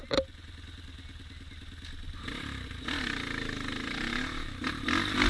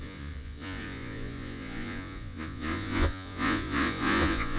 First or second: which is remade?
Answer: second